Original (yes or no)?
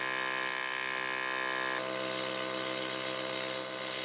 yes